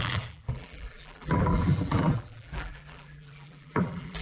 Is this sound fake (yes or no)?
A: yes